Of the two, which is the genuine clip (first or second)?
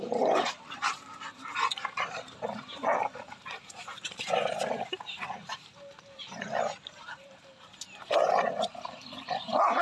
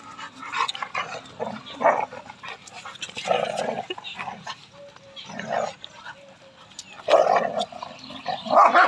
second